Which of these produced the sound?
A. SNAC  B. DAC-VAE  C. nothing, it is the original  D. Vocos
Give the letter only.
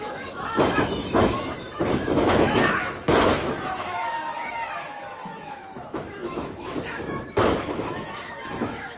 B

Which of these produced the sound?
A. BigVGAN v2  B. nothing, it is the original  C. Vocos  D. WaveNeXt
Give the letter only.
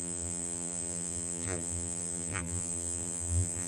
A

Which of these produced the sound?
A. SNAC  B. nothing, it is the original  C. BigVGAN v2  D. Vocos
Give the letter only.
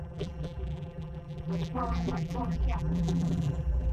C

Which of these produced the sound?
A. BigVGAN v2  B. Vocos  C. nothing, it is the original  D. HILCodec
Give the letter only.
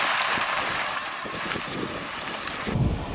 C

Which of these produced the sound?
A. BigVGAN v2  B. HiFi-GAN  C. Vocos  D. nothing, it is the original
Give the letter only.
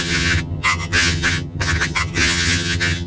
B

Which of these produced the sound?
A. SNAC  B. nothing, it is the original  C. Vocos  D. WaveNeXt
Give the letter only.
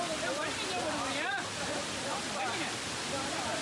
B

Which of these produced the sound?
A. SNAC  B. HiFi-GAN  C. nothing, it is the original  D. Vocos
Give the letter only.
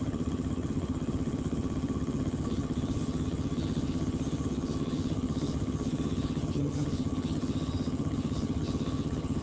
B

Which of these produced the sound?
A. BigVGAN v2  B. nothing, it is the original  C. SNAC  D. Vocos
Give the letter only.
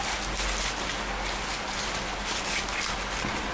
B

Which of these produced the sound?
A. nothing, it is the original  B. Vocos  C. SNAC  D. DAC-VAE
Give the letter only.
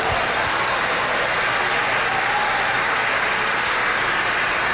A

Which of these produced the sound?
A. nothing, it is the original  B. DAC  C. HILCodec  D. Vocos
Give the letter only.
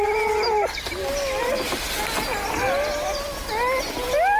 A